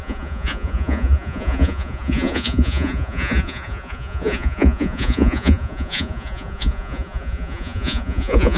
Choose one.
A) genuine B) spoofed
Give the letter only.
B